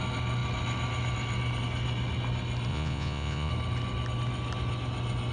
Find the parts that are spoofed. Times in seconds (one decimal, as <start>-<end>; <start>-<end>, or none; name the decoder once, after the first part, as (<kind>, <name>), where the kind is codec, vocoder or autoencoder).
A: 2.7-3.5 (vocoder, Vocos)